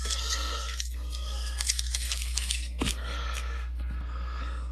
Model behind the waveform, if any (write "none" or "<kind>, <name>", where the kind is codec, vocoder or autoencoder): codec, SNAC